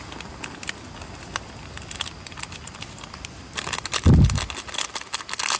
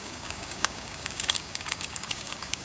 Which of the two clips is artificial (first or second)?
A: second